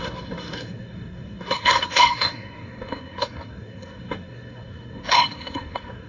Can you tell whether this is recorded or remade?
remade